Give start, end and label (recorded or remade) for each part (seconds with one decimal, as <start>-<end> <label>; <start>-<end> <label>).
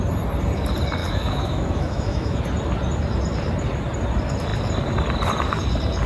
0.0-1.0 recorded; 1.0-2.4 remade; 2.4-6.1 recorded